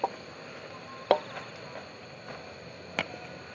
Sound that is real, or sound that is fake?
real